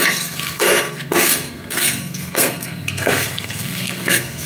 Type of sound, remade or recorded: remade